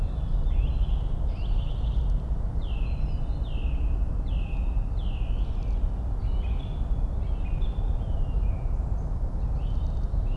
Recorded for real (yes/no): yes